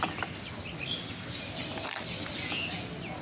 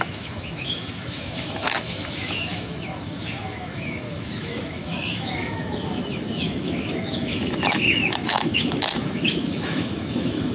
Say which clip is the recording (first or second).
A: first